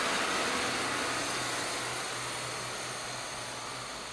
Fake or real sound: real